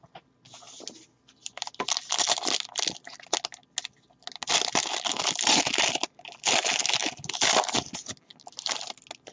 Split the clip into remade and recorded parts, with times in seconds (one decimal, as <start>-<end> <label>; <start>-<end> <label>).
0.0-9.3 recorded